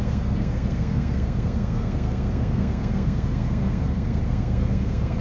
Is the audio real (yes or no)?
no